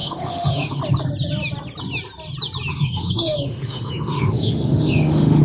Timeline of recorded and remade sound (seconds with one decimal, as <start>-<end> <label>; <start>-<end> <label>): 0.0-0.8 remade; 0.8-2.7 recorded; 2.7-5.4 remade